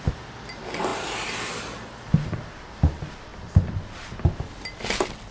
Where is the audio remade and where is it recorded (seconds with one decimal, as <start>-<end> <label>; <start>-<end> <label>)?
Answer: 0.0-5.3 recorded